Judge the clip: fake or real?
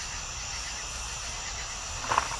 real